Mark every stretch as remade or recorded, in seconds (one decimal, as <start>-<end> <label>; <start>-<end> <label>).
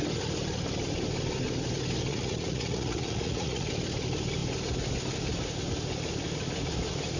0.0-2.1 recorded; 2.1-3.7 remade; 3.7-7.2 recorded